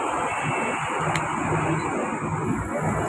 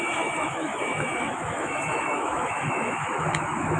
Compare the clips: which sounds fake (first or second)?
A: second